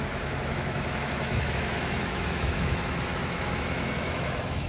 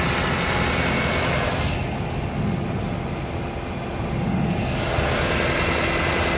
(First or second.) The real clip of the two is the second